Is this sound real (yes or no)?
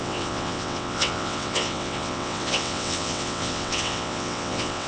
no